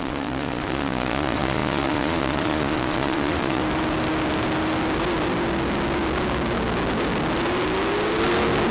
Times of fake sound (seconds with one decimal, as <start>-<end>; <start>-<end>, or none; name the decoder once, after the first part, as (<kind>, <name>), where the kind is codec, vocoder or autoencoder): 0.0-3.6 (vocoder, Vocos)